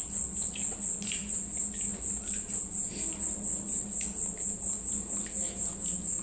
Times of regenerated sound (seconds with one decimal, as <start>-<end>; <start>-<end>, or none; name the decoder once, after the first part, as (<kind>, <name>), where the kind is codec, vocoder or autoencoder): none